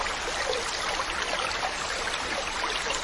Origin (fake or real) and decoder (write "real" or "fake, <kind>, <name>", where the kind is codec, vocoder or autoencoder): real